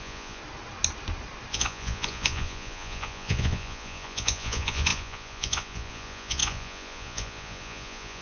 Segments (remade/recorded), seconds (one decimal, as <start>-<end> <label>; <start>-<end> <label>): 0.0-0.4 remade; 0.4-1.5 recorded; 1.5-8.2 remade